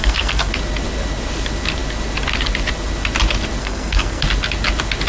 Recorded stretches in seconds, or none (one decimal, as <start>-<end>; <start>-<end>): 0.5-3.6; 4.2-5.1